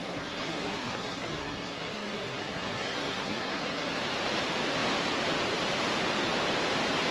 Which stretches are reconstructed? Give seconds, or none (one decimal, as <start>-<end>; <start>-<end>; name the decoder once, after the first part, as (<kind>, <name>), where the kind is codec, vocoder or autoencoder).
0.0-4.0 (codec, SNAC)

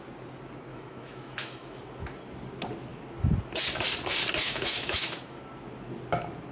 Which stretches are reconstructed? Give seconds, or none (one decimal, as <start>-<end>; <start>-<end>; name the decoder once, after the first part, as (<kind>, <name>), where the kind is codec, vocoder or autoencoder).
0.7-1.8 (autoencoder, DAC-VAE); 4.4-5.4

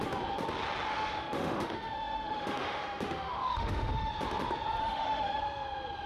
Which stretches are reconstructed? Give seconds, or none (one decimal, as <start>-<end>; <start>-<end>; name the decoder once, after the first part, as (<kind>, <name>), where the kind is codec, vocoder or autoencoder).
0.9-4.1 (autoencoder, DAC-VAE); 4.8-5.4

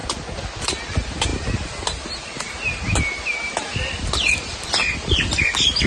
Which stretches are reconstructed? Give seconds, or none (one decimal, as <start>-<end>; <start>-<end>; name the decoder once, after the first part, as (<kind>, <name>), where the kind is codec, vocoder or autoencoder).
none

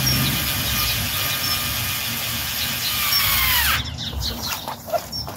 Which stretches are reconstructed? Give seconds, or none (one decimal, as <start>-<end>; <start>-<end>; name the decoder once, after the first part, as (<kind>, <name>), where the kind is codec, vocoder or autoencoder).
none

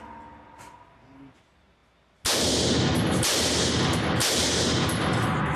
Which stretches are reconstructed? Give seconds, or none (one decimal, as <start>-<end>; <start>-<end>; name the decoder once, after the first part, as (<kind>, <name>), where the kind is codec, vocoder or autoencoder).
none